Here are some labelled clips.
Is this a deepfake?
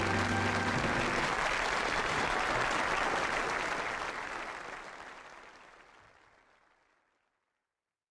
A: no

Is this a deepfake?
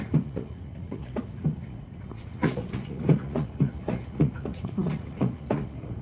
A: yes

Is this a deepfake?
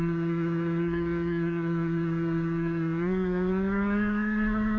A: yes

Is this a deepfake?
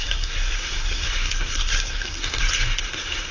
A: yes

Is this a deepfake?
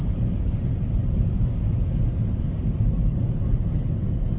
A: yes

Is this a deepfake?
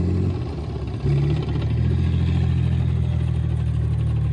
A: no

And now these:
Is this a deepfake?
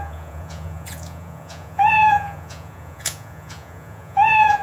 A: yes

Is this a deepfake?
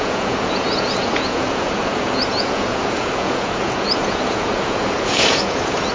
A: yes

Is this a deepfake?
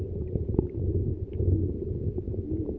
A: no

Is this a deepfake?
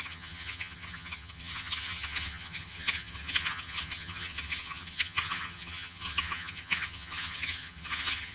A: yes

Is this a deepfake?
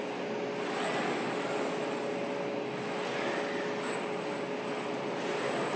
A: no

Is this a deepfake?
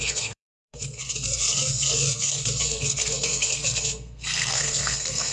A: yes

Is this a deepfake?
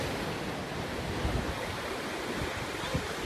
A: no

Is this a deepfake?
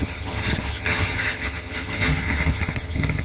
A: yes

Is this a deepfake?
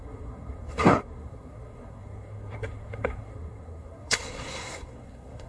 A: yes